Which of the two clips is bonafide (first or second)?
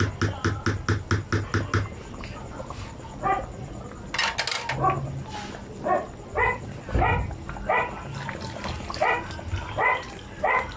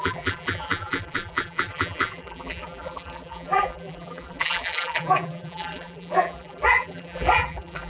first